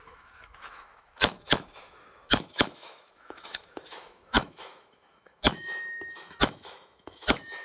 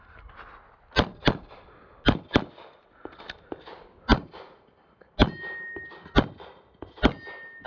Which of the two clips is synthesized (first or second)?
first